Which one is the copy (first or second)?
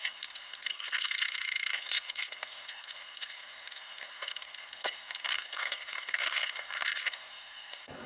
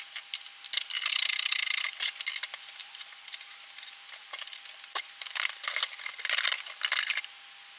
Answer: first